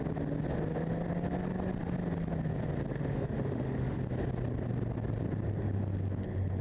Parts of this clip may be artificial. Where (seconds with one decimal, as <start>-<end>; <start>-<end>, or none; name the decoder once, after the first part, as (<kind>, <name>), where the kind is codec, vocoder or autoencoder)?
2.9-4.0 (autoencoder, DAC-VAE)